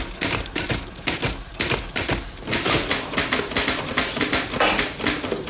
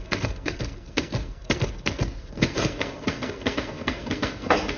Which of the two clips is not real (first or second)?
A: second